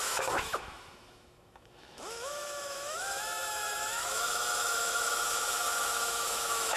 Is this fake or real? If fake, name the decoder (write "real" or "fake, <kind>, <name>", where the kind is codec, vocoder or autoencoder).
fake, autoencoder, DAC-VAE